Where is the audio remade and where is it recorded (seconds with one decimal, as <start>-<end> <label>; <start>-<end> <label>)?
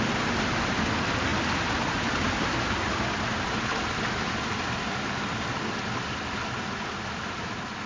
0.0-7.9 recorded